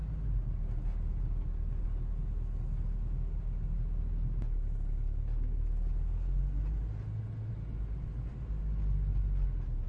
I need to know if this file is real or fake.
real